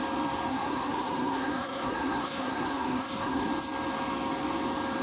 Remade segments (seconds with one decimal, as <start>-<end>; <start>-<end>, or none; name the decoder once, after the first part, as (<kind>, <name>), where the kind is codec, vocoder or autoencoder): 0.5-3.5 (codec, SNAC)